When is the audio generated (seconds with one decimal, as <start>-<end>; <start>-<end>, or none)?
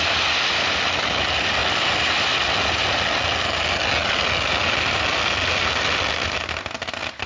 none